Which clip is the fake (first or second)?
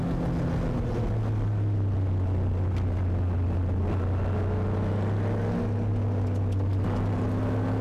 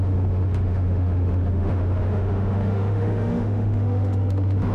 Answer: second